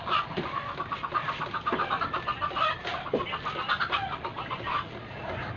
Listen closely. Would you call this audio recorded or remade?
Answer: recorded